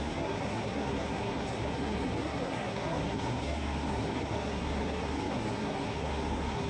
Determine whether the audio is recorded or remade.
remade